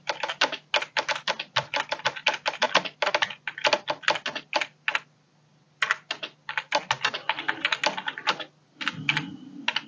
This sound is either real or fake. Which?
real